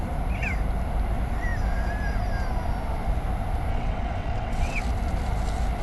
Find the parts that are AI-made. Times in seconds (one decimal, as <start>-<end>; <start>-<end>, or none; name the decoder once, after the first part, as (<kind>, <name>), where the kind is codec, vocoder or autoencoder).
3.7-4.8 (vocoder, WaveNeXt)